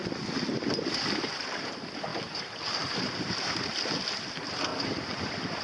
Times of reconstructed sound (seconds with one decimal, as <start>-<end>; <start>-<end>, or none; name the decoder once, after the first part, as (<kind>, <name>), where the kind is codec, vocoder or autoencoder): 2.1-3.2 (vocoder, BigVGAN v2); 4.7-5.6